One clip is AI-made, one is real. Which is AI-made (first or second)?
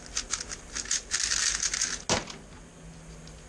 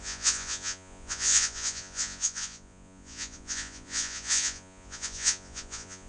second